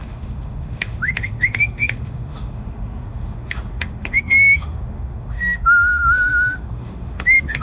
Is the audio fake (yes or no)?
yes